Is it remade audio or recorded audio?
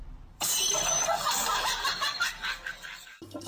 remade